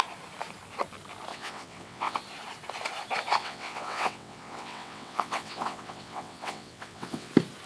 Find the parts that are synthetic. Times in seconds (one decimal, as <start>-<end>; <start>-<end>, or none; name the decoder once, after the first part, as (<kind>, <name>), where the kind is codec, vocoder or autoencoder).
1.3-2.2 (vocoder, WaveNeXt); 3.4-7.3